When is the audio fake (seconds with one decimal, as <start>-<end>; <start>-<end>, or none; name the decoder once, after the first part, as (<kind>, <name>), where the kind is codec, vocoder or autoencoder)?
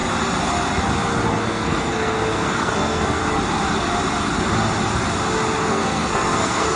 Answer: 1.4-3.2 (codec, SNAC); 5.7-6.8